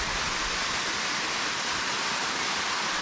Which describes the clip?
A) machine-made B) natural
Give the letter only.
B